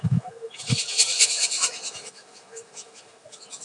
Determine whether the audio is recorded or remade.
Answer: remade